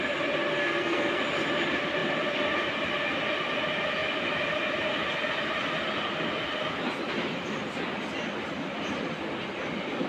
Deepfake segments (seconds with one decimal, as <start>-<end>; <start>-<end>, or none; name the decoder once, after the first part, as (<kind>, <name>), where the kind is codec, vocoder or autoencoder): 0.6-1.2 (codec, SNAC)

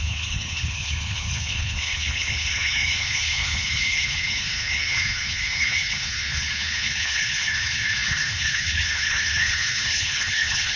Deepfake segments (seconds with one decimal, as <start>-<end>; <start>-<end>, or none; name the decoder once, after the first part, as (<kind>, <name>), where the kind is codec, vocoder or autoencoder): 0.0-10.8 (codec, HILCodec)

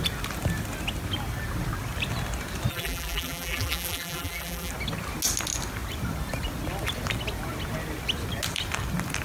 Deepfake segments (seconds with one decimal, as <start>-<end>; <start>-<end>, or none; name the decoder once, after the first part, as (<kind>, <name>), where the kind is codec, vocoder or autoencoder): 2.7-4.7 (vocoder, BigVGAN v2)

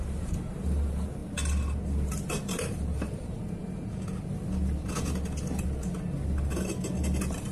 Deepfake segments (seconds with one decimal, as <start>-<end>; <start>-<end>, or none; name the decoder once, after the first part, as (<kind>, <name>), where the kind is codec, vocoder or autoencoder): none